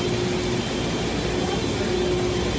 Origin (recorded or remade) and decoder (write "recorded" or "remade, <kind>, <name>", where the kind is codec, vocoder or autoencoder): recorded